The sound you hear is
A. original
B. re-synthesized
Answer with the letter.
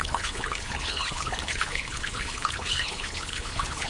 B